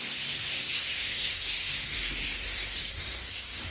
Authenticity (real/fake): fake